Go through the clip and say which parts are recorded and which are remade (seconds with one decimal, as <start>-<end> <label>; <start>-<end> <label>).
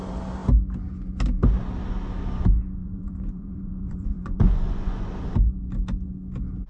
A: 0.0-2.8 recorded; 2.8-5.1 remade; 5.1-6.7 recorded